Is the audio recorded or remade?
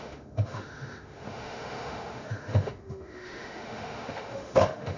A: remade